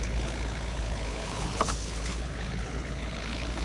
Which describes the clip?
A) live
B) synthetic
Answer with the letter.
B